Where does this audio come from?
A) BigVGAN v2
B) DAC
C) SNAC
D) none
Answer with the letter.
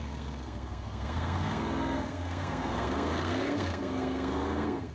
C